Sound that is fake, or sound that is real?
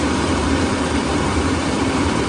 fake